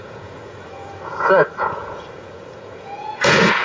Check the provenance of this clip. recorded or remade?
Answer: remade